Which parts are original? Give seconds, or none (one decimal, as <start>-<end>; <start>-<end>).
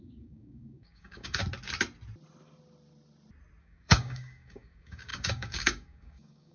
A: 1.4-3.6